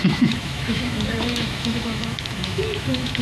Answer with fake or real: fake